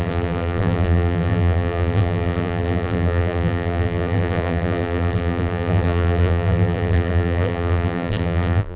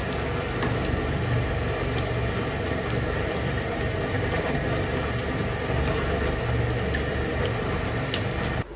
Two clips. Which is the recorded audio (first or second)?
second